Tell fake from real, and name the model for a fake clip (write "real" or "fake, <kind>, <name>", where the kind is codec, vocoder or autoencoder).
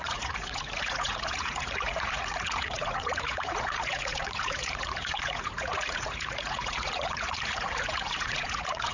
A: fake, vocoder, Vocos